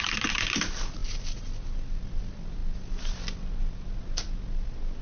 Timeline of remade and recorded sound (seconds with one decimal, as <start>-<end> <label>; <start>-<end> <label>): 0.0-5.0 recorded